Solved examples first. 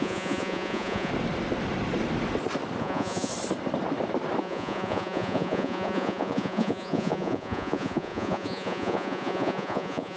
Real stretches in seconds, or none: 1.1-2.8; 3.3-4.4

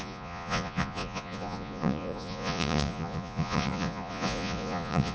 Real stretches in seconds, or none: none

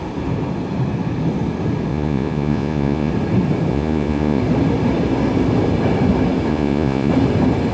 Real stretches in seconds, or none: 0.0-1.9; 3.1-3.7; 4.4-6.5; 7.1-7.7

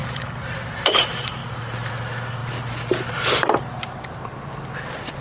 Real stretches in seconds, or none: 0.0-5.2